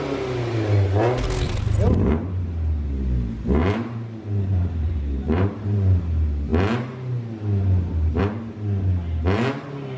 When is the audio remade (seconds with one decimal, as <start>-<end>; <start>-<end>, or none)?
3.6-6.0